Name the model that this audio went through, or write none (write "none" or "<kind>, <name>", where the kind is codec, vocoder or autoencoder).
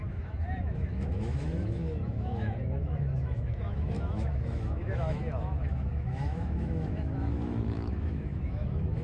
autoencoder, DAC-VAE